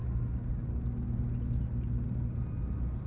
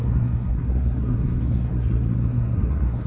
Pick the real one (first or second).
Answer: first